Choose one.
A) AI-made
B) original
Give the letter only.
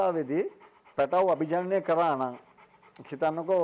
B